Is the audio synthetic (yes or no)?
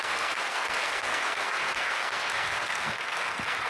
yes